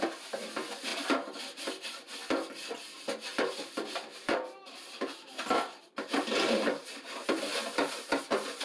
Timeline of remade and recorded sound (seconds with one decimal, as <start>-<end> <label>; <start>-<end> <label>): 0.0-0.9 recorded; 0.9-1.4 remade; 1.4-3.3 recorded; 3.3-8.2 remade; 8.2-8.6 recorded